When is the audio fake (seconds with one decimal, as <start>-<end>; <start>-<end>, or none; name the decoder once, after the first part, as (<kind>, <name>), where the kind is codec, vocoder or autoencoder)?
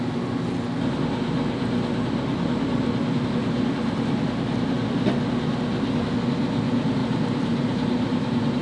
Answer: 3.4-4.4 (vocoder, BigVGAN v2); 7.0-8.6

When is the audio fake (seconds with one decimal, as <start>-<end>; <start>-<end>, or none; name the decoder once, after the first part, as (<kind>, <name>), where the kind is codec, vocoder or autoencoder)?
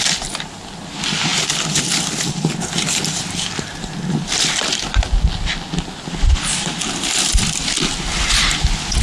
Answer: none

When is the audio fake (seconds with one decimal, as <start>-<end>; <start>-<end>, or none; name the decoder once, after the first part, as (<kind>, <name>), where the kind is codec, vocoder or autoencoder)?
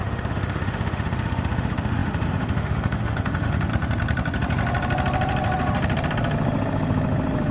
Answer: 0.0-3.7 (autoencoder, DAC-VAE)